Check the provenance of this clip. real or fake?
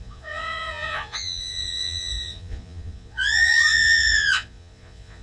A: fake